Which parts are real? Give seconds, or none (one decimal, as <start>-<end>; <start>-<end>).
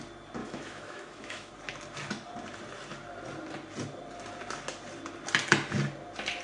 0.0-0.4; 1.5-6.4